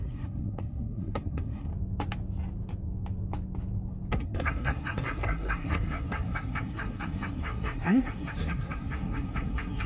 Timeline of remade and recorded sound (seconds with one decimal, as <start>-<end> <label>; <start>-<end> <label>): 0.0-1.7 remade; 1.7-4.1 recorded; 4.1-9.9 remade